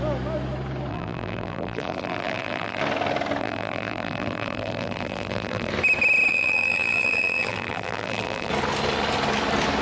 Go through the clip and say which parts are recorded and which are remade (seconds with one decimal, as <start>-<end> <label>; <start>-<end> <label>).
0.0-0.9 recorded; 0.9-2.8 remade; 2.8-3.4 recorded; 3.4-5.7 remade; 5.7-6.3 recorded; 6.3-8.5 remade; 8.5-9.8 recorded